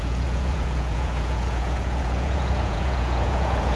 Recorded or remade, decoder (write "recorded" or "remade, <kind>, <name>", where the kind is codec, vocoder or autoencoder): remade, vocoder, Vocos